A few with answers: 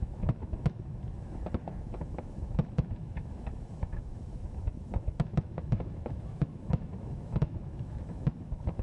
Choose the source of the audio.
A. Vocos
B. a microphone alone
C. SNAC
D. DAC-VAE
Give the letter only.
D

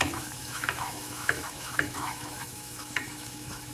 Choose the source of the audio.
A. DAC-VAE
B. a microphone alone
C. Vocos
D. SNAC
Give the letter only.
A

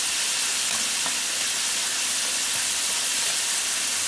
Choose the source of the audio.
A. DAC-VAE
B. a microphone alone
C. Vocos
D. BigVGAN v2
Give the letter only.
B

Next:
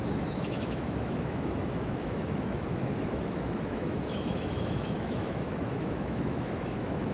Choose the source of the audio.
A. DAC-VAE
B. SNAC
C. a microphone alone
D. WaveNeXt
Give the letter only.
A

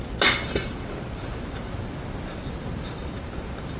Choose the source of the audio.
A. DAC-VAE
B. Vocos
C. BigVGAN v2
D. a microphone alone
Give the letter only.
D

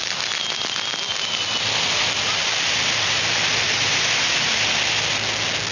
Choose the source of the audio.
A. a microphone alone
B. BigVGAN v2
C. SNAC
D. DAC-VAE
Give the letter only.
A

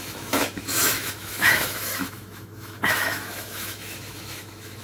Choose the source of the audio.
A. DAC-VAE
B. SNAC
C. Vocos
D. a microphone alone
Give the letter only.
A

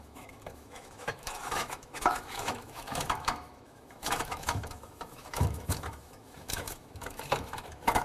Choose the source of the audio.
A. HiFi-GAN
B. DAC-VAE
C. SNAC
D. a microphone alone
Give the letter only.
B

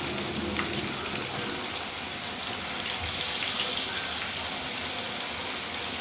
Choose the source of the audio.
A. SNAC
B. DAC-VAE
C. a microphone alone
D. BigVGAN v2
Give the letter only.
C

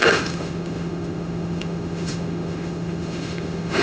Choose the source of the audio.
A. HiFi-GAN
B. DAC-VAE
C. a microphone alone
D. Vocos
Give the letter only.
B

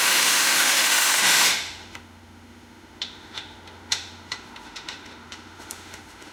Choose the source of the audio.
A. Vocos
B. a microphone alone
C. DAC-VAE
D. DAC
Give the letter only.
C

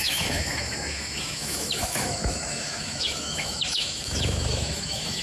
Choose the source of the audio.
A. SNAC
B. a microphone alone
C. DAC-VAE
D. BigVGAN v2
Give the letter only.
C